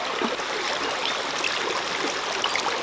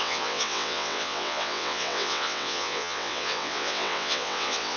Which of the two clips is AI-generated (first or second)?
second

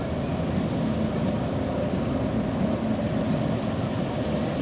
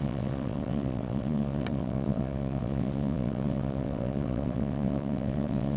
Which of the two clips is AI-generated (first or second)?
second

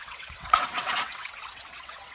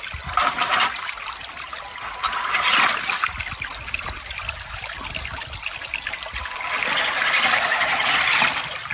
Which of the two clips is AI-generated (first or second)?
first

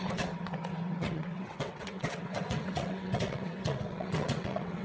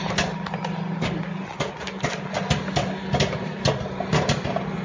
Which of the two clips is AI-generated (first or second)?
first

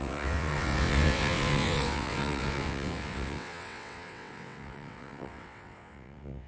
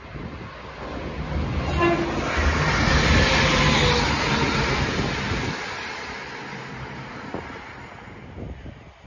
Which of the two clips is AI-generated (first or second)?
first